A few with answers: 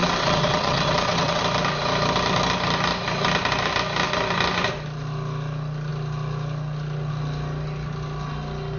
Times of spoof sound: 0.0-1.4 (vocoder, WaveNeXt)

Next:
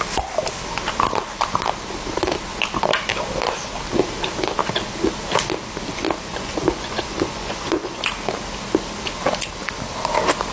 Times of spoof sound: 6.3-8.0 (vocoder, Vocos)

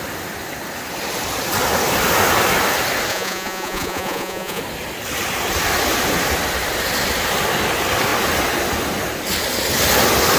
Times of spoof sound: 3.1-4.6 (vocoder, Vocos)

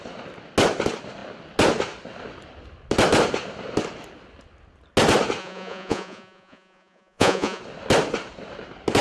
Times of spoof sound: 5.4-7.6 (vocoder, Vocos)

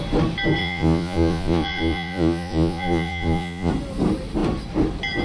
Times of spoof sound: 0.6-3.7 (vocoder, Vocos)